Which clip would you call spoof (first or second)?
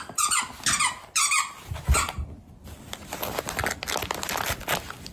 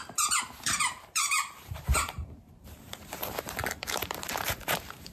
second